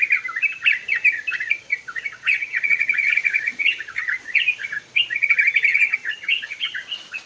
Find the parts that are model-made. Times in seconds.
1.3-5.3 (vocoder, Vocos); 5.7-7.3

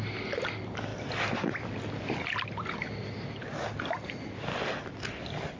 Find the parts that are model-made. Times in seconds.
none

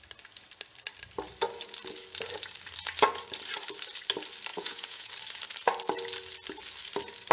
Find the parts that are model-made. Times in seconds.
4.5-5.1 (vocoder, Vocos)

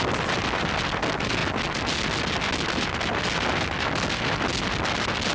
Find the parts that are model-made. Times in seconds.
none

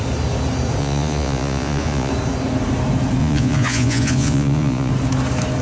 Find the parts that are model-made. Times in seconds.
0.8-2.1 (vocoder, Vocos); 3.2-4.9

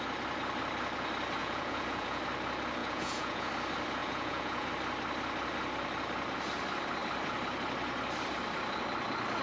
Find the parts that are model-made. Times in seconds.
1.4-2.2 (vocoder, Vocos); 2.8-3.5; 4.0-4.7

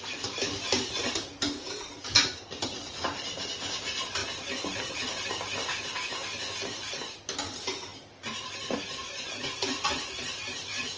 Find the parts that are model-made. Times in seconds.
none